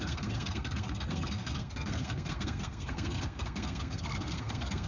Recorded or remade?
remade